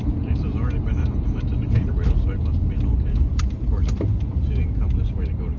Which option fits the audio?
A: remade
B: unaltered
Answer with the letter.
B